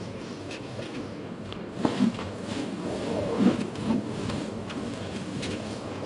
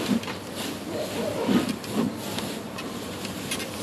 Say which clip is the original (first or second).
second